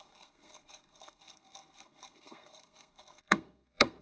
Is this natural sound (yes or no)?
no